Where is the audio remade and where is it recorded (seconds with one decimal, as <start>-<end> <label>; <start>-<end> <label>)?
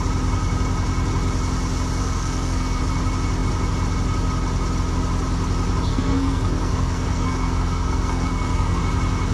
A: 0.0-2.0 recorded; 2.0-2.8 remade; 2.8-5.9 recorded; 5.9-8.8 remade; 8.8-9.3 recorded